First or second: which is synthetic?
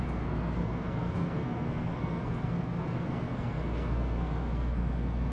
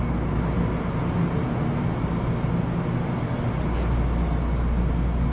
first